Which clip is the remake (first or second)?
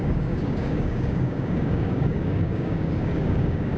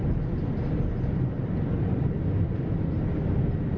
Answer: first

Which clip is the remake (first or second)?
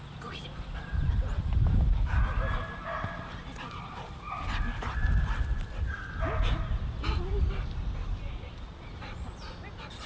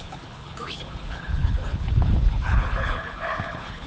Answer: second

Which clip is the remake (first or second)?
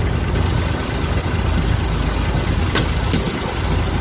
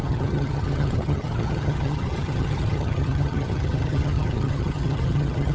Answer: second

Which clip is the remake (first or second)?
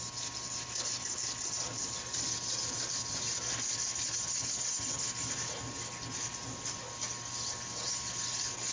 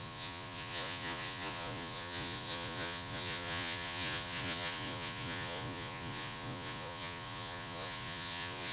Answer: second